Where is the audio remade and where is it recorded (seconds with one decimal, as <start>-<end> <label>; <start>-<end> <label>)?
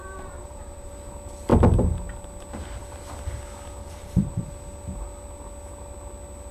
0.0-0.9 remade; 0.9-3.8 recorded; 3.8-4.5 remade; 4.5-6.5 recorded